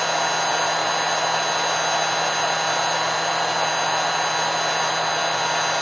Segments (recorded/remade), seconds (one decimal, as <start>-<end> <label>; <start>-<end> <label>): 0.0-5.8 recorded